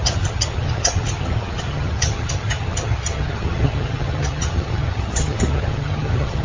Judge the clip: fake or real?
fake